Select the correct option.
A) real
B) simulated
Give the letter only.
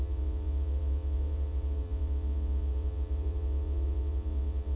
B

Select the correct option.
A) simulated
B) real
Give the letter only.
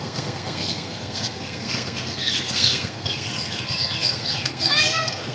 A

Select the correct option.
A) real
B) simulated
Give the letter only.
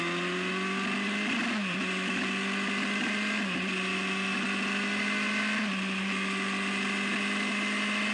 A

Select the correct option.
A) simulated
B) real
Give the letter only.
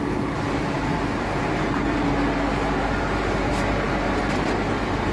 B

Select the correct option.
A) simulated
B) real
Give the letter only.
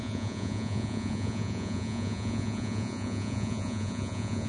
A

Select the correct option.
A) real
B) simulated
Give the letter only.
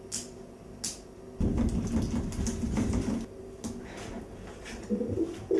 A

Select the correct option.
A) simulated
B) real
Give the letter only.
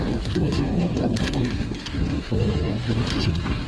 A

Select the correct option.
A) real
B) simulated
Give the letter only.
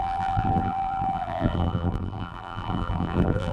B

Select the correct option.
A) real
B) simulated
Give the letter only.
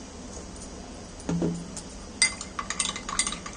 A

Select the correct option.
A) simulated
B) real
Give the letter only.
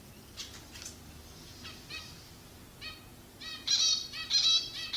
B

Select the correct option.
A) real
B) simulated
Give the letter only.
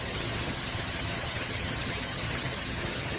B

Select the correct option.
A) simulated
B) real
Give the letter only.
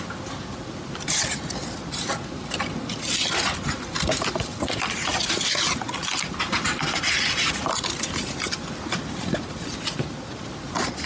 B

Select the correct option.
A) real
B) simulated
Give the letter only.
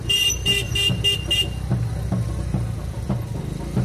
A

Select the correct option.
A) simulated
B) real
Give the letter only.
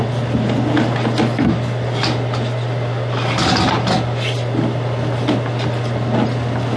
B